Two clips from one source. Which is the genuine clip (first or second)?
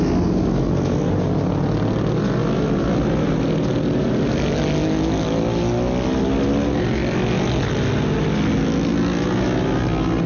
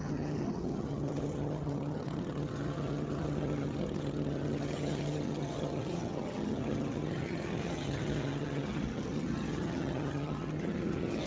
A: first